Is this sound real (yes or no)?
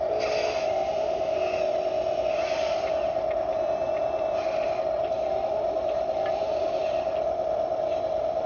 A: yes